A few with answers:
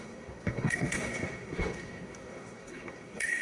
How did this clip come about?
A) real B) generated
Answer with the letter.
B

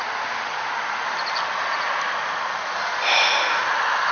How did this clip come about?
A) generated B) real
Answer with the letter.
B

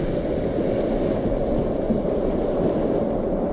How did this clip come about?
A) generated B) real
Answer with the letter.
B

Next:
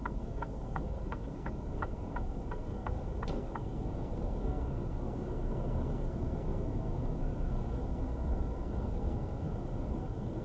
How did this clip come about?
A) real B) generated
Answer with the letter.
B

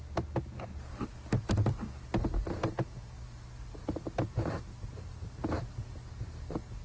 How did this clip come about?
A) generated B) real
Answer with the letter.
B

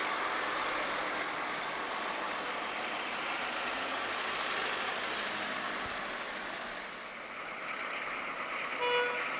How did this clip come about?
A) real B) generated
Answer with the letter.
A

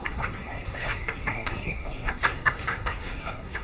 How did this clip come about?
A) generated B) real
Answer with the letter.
A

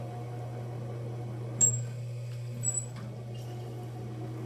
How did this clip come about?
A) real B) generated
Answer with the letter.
A